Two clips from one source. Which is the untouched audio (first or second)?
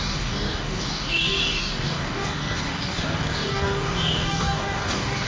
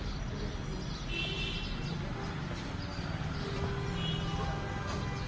second